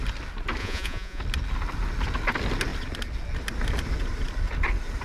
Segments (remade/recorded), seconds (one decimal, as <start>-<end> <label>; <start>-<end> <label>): 0.0-0.6 recorded; 0.6-1.2 remade; 1.2-5.0 recorded